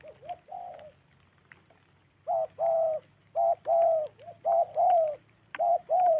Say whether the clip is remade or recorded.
recorded